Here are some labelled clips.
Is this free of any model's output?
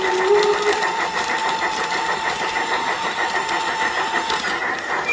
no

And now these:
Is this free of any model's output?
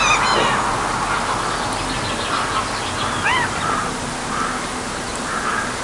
yes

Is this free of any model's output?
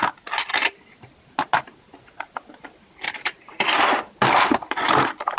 yes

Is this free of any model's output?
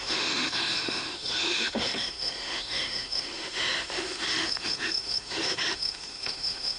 no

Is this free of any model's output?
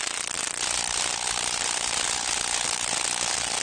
yes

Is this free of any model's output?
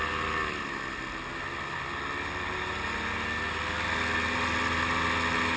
yes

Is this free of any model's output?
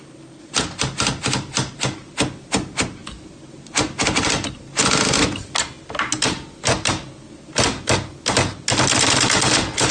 yes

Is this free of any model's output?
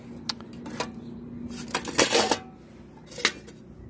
yes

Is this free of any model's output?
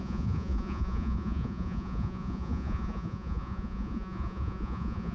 no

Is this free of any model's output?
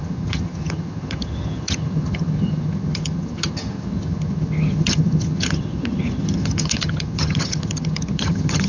no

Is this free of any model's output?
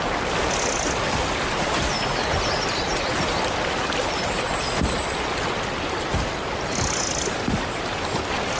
yes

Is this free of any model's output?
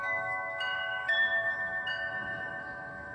no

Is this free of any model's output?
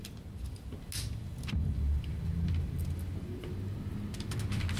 yes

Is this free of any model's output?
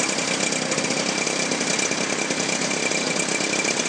yes